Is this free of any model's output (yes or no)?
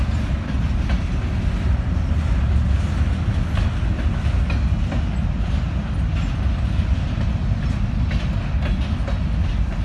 yes